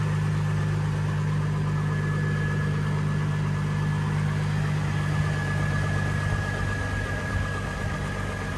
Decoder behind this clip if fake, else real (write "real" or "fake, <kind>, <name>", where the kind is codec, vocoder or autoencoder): real